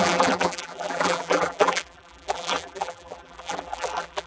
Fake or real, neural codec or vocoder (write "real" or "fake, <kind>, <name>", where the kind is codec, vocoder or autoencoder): fake, vocoder, BigVGAN v2